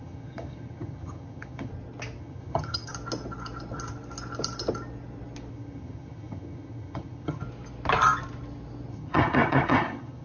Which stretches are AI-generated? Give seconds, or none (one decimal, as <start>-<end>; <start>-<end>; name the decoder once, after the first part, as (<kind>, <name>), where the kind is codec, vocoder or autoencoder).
0.0-1.7 (vocoder, HiFi-GAN); 2.2-2.9; 5.5-7.4; 8.9-10.2